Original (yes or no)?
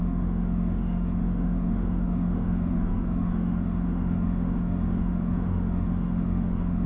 no